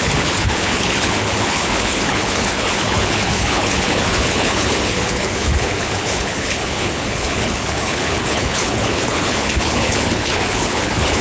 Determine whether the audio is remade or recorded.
remade